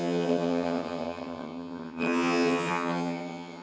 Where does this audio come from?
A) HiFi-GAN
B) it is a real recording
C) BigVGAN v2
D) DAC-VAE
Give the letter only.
A